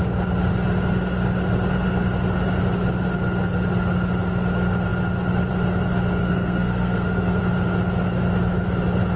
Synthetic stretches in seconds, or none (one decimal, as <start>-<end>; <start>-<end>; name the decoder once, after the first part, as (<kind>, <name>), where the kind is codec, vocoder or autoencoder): 6.2-7.4 (codec, SNAC)